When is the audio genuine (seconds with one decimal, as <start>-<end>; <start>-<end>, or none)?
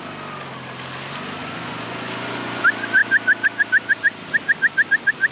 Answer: 0.0-1.4; 2.6-5.3